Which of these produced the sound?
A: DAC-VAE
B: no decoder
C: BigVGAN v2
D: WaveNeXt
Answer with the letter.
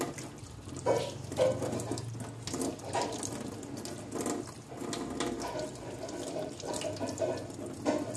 B